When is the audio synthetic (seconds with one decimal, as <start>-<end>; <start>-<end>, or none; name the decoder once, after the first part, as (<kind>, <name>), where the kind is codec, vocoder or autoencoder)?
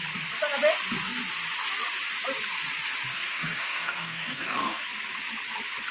3.1-4.8 (codec, DAC)